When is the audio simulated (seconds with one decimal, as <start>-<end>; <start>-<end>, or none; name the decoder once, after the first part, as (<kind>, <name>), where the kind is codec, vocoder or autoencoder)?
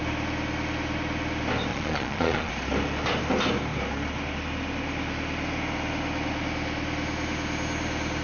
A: 1.7-2.5 (vocoder, Vocos)